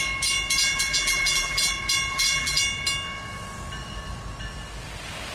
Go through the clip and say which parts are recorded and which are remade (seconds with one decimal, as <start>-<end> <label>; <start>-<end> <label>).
0.0-0.6 recorded; 0.6-1.7 remade; 1.7-2.1 recorded; 2.1-2.6 remade; 2.6-5.3 recorded